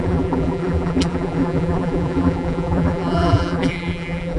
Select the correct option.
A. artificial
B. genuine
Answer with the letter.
A